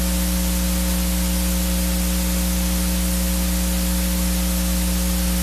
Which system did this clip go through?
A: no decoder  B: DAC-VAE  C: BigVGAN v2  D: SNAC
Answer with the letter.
A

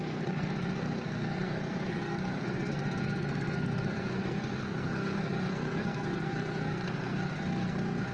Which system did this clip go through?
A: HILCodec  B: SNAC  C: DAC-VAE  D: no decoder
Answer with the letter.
B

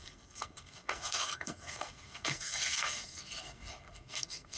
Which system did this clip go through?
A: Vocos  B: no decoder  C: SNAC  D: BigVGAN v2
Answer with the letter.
C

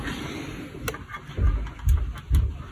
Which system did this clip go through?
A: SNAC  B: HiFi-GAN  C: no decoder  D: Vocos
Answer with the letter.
C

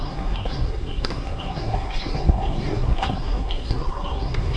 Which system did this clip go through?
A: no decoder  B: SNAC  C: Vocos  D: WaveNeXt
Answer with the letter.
B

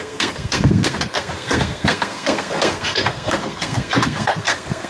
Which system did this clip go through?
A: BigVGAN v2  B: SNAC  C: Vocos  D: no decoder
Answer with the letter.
B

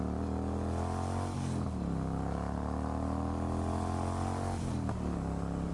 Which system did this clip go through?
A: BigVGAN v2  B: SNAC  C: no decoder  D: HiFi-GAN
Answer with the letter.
C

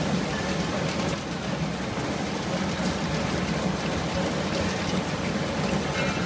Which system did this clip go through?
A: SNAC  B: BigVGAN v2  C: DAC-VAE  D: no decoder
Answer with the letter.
D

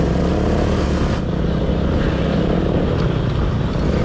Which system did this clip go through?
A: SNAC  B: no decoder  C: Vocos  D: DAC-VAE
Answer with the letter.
B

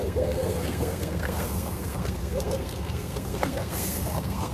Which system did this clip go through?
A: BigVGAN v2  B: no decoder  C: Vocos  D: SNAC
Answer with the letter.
D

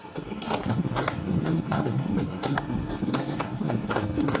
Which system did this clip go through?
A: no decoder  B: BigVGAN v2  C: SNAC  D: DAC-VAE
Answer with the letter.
C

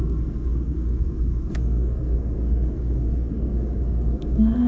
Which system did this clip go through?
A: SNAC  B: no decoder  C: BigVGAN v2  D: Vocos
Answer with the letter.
A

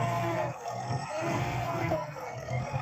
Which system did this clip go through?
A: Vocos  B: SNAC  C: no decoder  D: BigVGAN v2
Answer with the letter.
B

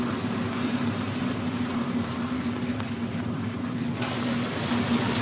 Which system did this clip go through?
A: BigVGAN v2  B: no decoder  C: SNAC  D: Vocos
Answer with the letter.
B